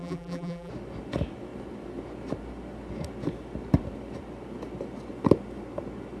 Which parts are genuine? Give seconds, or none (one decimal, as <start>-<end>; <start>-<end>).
0.7-6.2

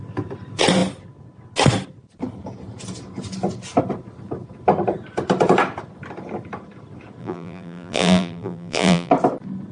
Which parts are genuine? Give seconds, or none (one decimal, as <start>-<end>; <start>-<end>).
0.0-7.2; 9.1-9.7

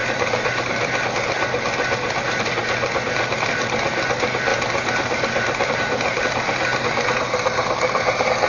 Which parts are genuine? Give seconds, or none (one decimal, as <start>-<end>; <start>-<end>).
0.7-2.6; 3.3-4.5; 5.7-8.5

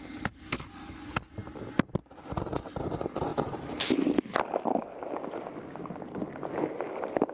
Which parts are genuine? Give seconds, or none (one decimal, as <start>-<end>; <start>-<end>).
0.0-7.3

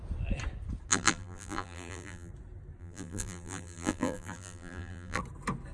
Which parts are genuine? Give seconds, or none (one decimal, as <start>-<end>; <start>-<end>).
0.0-0.9; 2.3-2.8; 5.2-5.7

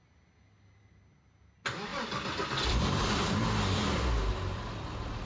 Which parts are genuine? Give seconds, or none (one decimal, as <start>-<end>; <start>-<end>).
0.0-1.9; 3.1-5.3

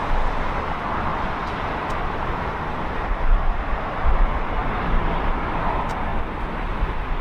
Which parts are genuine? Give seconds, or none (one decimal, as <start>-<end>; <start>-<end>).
0.0-1.1; 3.2-4.6; 5.3-6.1